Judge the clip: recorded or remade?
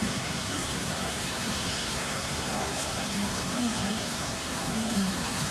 remade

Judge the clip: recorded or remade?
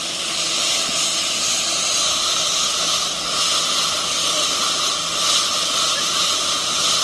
recorded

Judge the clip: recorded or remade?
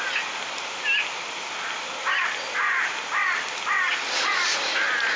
recorded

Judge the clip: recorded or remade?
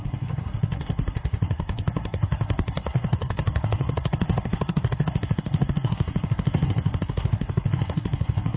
remade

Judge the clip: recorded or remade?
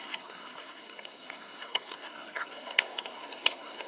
remade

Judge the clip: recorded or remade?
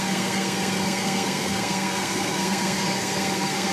remade